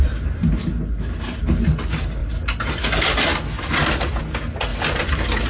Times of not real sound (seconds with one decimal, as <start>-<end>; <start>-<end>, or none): 4.7-5.5